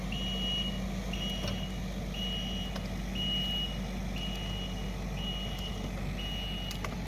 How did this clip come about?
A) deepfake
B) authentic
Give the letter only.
B